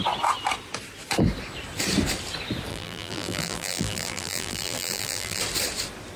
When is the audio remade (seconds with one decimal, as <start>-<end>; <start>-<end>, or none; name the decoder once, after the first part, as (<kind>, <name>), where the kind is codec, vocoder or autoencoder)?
2.7-5.4 (vocoder, BigVGAN v2)